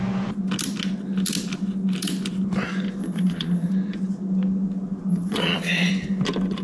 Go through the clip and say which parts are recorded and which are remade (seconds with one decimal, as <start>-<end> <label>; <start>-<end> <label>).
0.0-3.0 recorded; 3.0-3.7 remade; 3.7-5.1 recorded; 5.1-5.9 remade; 5.9-6.6 recorded